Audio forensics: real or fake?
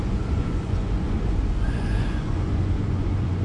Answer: fake